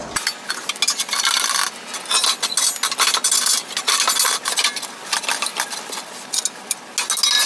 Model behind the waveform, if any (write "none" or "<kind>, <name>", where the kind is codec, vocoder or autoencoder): none